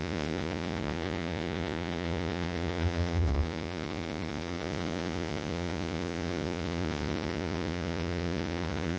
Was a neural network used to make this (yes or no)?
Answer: yes